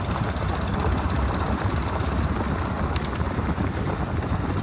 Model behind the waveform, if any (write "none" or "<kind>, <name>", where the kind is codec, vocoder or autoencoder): none